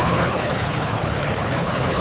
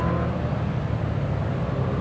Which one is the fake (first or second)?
first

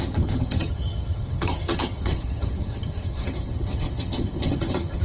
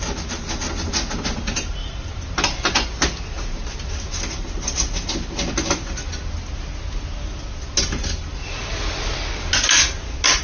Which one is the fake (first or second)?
first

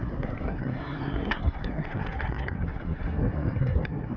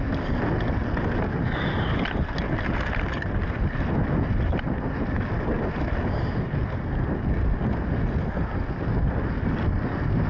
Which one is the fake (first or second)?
first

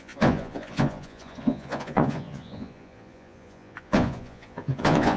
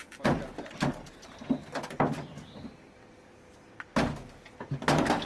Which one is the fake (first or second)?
first